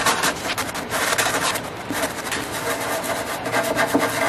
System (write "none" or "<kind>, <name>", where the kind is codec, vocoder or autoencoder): none